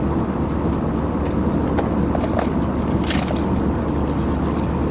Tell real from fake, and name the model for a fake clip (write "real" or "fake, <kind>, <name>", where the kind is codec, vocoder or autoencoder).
real